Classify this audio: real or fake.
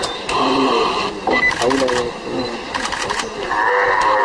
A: real